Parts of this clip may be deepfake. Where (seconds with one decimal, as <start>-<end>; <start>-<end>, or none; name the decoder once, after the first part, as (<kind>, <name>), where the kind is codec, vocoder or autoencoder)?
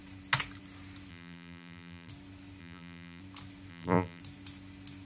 1.1-2.1 (vocoder, BigVGAN v2); 2.6-3.2; 3.7-4.2